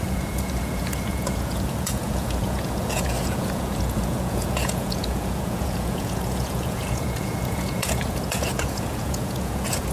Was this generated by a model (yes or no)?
yes